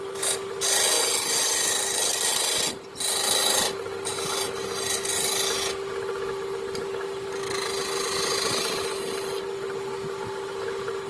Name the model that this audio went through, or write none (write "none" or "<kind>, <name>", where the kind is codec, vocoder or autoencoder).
none